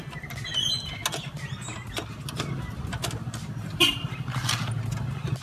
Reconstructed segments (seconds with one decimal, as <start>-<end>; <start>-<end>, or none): none